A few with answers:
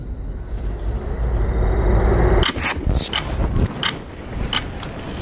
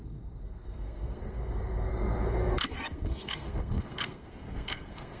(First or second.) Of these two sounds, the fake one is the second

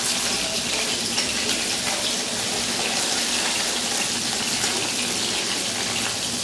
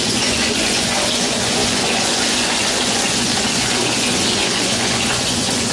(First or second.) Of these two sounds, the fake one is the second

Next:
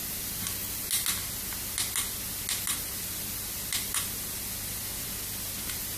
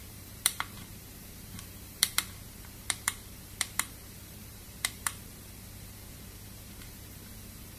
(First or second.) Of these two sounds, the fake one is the second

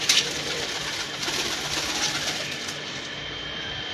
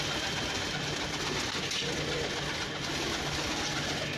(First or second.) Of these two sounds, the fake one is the first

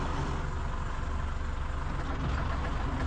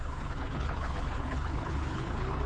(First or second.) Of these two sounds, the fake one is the second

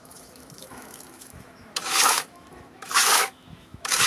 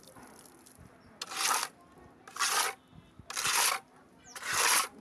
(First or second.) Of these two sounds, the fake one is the first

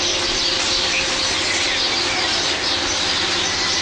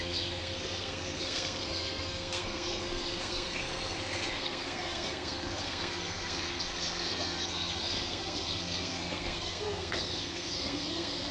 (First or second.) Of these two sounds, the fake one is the second